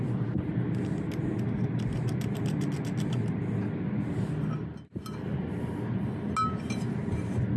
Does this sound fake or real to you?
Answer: real